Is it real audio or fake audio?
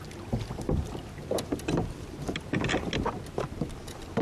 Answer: real